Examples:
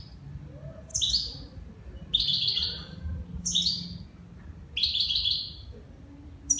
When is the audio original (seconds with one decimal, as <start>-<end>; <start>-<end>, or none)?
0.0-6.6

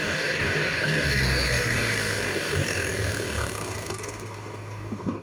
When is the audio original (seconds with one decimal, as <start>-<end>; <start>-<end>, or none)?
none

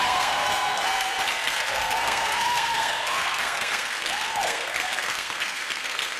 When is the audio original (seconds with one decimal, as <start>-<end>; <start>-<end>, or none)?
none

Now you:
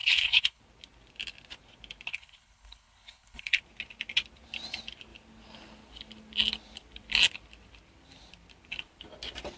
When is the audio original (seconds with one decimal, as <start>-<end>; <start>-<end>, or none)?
0.6-2.1; 3.6-9.6

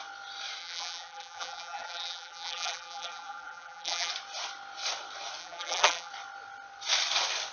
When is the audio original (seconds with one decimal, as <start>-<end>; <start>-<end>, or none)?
0.0-0.6; 4.1-5.4; 6.1-7.5

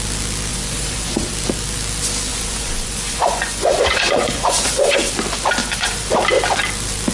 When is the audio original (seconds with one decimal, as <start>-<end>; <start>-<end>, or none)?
0.0-0.5; 1.3-2.3; 5.1-5.6; 6.1-7.1

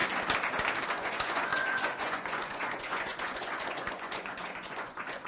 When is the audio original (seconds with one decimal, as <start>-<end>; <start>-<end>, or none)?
0.0-0.9